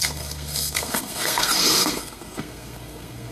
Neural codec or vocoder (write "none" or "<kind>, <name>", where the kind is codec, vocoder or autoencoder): codec, SNAC